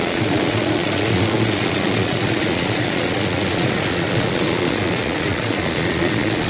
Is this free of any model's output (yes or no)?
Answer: no